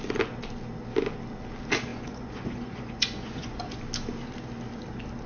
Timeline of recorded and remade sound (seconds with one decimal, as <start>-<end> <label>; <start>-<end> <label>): 0.0-1.9 recorded; 1.9-3.8 remade; 3.8-5.3 recorded